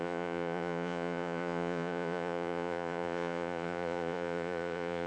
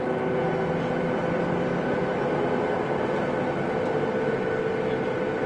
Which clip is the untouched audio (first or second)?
second